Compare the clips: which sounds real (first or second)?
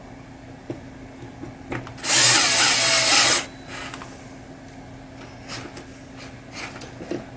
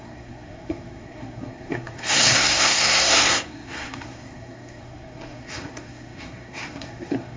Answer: first